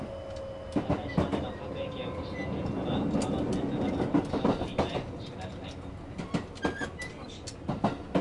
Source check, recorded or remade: recorded